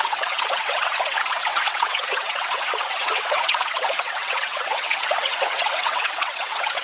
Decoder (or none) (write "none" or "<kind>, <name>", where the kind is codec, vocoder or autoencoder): vocoder, WaveNeXt